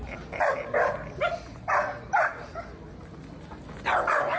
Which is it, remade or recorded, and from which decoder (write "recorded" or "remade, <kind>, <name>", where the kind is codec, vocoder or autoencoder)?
recorded